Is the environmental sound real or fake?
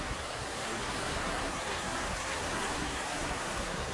fake